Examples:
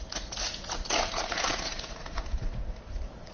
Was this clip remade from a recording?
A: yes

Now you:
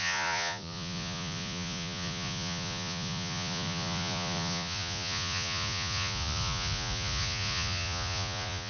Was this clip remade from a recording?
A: yes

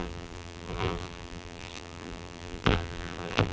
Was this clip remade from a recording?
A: yes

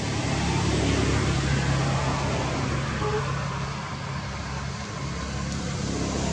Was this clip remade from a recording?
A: no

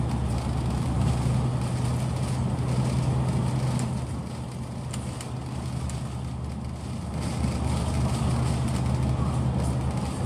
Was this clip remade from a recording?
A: no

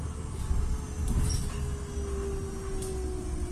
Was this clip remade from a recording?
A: no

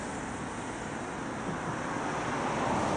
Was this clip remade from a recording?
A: no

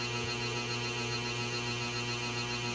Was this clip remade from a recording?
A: no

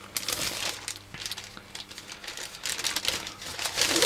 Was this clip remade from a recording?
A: no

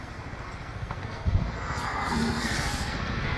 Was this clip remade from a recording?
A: yes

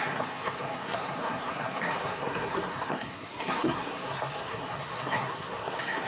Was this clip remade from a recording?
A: yes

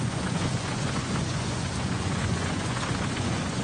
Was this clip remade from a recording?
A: yes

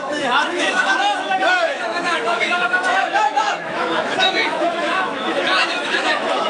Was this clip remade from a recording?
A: yes